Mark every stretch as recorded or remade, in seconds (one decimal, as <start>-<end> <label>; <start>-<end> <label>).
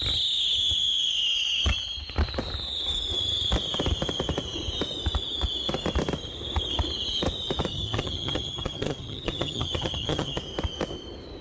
0.0-7.7 recorded; 7.7-10.4 remade; 10.4-11.4 recorded